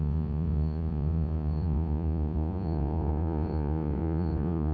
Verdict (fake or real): fake